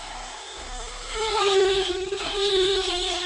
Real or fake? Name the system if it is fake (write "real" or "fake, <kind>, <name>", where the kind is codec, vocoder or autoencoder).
fake, codec, SNAC